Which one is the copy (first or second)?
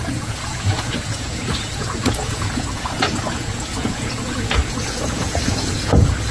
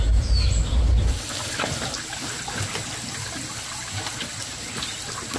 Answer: first